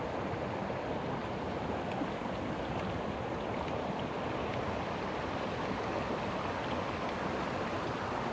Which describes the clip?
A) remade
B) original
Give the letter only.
B